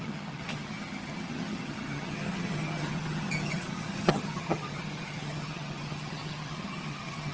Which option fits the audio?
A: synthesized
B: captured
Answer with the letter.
A